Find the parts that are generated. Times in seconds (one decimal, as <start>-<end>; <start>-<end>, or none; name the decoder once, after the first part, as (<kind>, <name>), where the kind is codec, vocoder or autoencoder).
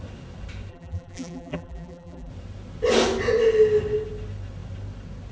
0.7-2.3 (vocoder, BigVGAN v2)